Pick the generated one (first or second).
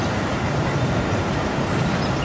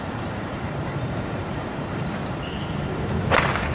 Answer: second